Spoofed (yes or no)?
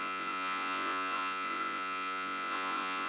yes